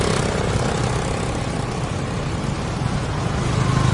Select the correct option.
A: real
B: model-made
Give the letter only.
A